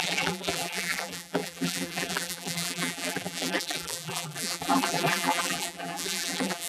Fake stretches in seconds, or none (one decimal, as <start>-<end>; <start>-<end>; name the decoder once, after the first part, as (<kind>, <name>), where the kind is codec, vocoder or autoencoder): 0.0-6.7 (vocoder, BigVGAN v2)